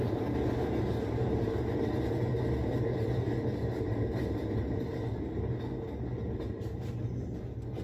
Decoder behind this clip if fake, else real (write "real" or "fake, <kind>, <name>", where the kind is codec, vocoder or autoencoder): real